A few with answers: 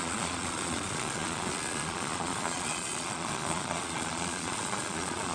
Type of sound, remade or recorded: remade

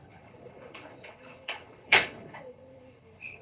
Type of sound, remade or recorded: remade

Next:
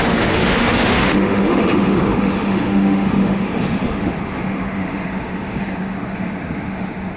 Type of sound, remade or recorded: remade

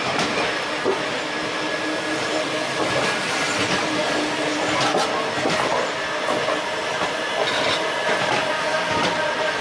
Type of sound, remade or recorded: recorded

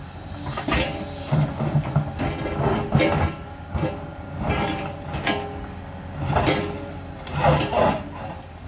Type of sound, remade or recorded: recorded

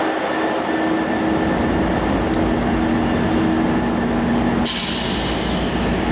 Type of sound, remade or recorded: recorded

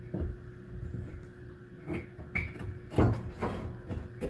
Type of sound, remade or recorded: recorded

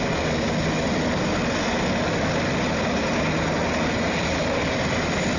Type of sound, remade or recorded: recorded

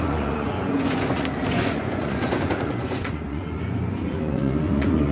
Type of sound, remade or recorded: remade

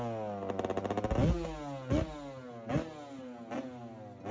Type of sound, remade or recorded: recorded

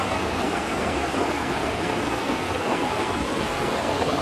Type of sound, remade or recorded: remade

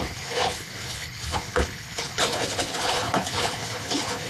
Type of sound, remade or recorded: remade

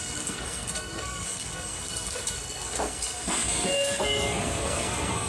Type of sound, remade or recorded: remade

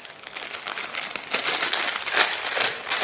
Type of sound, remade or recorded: recorded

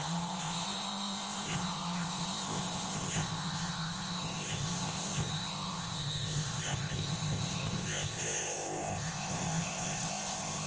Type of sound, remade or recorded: remade